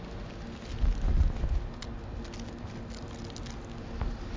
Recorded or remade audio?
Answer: recorded